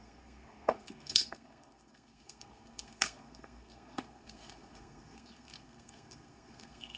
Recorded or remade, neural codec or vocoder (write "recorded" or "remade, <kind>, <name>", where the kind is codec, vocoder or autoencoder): remade, codec, SNAC